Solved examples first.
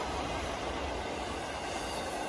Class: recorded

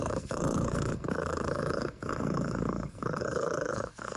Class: remade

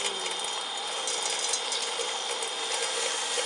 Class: recorded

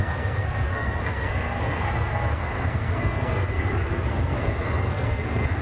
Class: remade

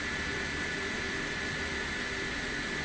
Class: recorded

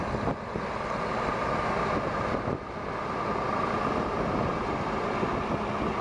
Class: recorded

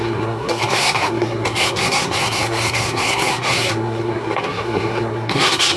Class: remade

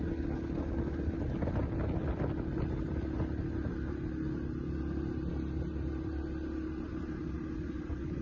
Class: recorded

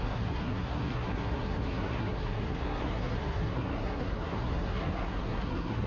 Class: remade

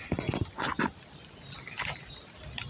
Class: recorded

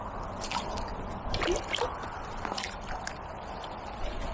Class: recorded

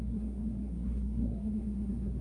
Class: remade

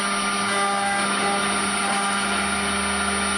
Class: recorded